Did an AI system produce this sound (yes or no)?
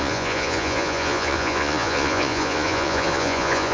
yes